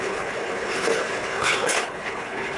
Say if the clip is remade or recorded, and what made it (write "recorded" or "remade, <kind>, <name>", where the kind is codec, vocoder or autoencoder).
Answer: remade, codec, HILCodec